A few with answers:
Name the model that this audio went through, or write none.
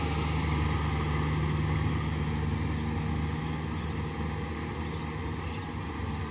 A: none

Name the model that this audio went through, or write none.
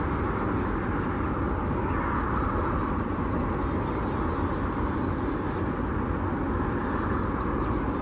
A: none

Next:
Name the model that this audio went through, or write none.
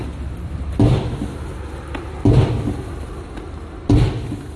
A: none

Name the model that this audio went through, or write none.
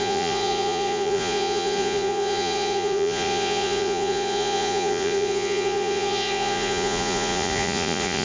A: vocoder, Vocos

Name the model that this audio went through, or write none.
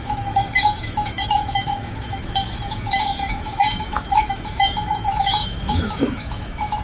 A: autoencoder, DAC-VAE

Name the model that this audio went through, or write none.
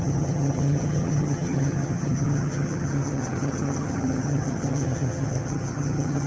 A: vocoder, HiFi-GAN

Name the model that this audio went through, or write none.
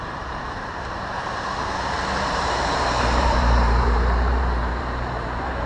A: vocoder, BigVGAN v2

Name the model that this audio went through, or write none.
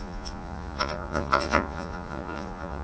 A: vocoder, Vocos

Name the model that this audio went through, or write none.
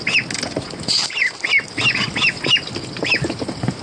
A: none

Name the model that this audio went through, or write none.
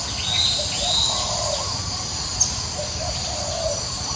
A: none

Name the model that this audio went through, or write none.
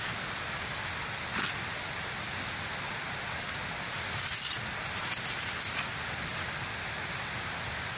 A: none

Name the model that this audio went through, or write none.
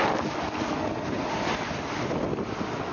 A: none